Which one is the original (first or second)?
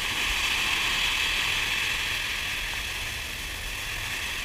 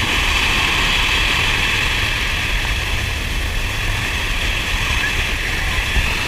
first